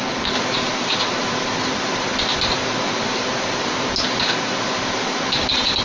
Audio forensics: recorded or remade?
recorded